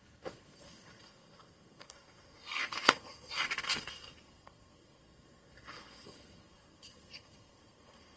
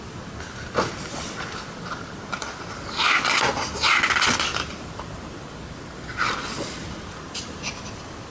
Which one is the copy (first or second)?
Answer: first